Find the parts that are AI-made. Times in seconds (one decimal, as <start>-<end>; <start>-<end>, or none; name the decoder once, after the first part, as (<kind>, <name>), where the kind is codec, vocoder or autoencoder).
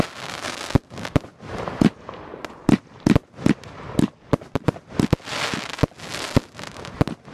none